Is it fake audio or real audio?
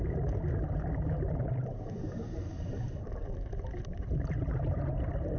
real